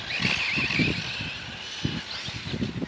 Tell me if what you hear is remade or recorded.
recorded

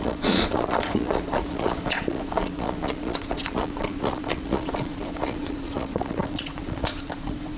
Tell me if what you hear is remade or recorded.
remade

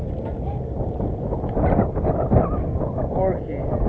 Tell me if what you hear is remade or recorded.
recorded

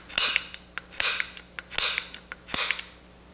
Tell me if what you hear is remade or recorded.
recorded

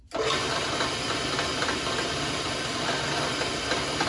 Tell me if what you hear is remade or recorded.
recorded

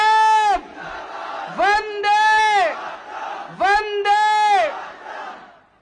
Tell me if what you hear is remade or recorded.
recorded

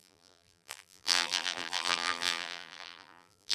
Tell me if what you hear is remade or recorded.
remade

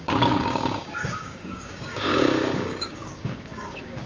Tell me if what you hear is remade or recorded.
remade